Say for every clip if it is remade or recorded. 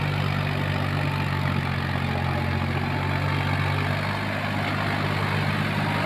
recorded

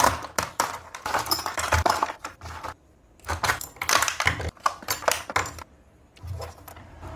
remade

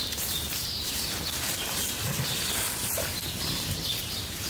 remade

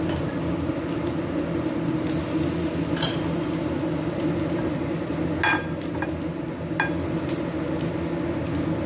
recorded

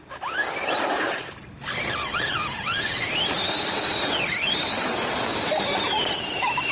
recorded